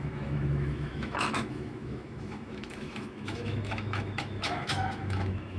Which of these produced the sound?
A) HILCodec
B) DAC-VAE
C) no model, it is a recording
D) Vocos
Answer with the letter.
B